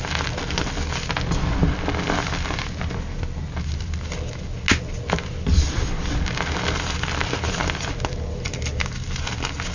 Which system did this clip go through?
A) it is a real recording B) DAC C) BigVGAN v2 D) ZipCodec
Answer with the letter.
A